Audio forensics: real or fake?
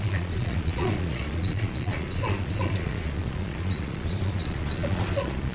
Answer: fake